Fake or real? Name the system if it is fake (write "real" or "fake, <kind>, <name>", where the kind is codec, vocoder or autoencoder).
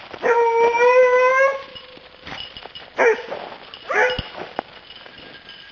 real